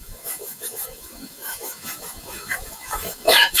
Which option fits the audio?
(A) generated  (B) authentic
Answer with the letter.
A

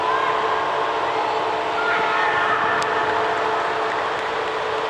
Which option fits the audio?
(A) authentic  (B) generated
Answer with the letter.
A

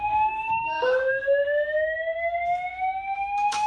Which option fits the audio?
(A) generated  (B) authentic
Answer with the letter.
A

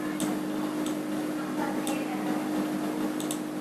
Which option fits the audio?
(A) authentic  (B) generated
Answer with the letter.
A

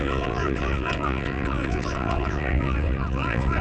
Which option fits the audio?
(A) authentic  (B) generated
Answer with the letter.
B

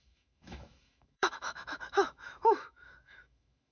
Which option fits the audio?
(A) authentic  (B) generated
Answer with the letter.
B